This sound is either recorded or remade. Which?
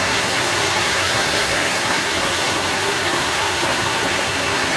remade